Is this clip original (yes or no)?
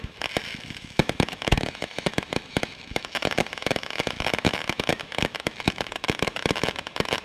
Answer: no